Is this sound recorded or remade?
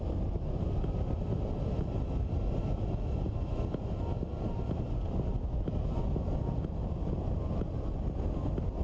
recorded